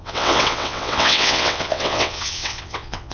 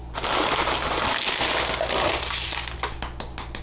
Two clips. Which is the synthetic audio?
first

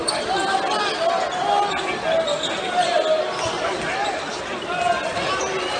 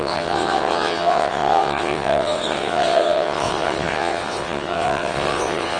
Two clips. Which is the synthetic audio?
second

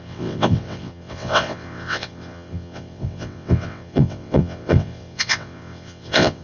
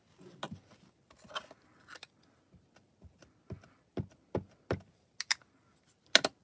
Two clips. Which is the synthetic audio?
first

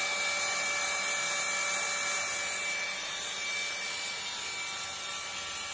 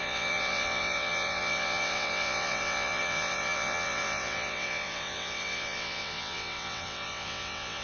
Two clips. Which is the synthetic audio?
second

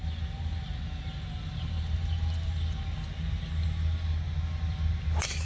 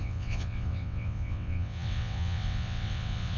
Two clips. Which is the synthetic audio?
second